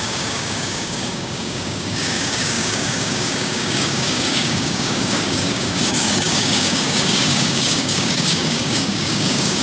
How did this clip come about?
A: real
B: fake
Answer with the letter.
B